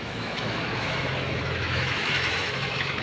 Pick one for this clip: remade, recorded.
remade